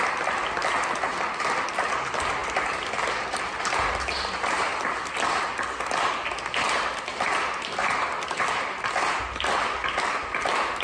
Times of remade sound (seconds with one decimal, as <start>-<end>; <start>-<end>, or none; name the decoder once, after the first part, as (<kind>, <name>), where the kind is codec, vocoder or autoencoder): none